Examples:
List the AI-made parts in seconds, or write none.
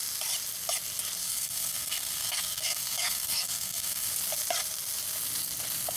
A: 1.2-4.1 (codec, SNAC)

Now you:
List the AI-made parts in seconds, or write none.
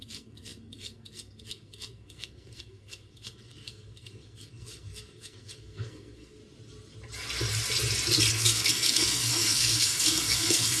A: 0.0-6.4 (codec, SNAC); 8.3-10.8